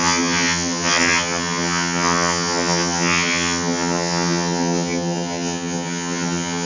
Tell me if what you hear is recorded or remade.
remade